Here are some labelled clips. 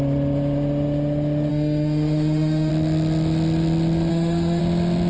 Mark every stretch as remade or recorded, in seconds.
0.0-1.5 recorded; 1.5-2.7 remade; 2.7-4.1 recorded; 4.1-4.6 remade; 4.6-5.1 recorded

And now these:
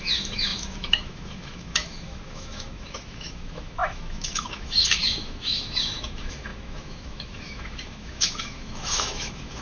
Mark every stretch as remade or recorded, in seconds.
0.0-9.6 remade

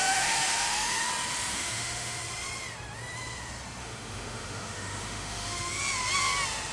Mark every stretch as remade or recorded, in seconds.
0.0-1.1 remade; 1.1-1.5 recorded; 1.5-2.2 remade; 2.2-3.8 recorded; 3.8-5.8 remade; 5.8-6.7 recorded

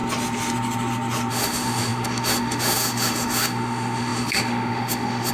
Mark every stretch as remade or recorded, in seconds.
0.0-1.3 recorded; 1.3-5.3 remade

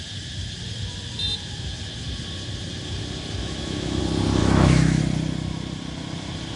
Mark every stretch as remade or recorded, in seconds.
0.0-3.4 recorded; 3.4-4.0 remade; 4.0-4.4 recorded; 4.4-5.0 remade; 5.0-6.6 recorded

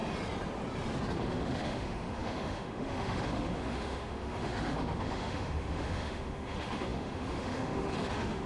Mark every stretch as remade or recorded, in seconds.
0.0-1.2 recorded; 1.2-8.5 remade

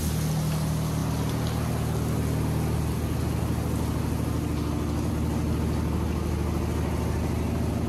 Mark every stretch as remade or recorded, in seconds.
0.0-7.9 recorded

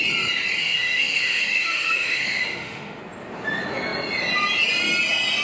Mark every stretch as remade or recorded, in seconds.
0.0-0.6 recorded; 0.6-3.0 remade; 3.0-5.4 recorded